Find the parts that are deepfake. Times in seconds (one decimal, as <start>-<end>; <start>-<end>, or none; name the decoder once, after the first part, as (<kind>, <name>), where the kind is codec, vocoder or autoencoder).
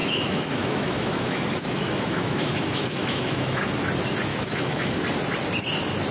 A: 0.0-3.7 (autoencoder, DAC-VAE); 4.3-4.9